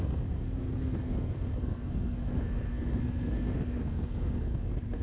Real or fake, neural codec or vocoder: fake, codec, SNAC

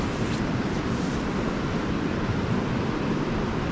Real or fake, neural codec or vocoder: real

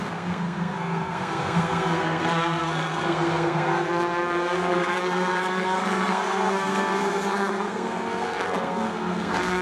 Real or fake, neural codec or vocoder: fake, codec, SNAC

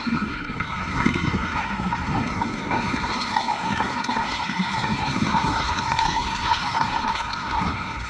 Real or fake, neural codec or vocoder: fake, codec, SNAC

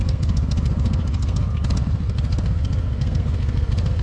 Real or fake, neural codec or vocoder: fake, codec, SNAC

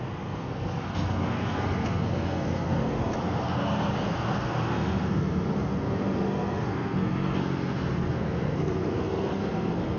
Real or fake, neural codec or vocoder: fake, codec, SNAC